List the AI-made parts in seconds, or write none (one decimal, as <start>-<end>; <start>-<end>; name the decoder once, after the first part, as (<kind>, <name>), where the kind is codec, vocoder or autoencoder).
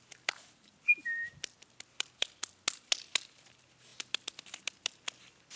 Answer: none